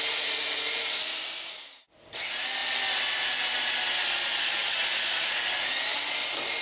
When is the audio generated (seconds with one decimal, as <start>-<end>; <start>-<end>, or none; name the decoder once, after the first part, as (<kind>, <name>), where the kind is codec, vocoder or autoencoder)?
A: none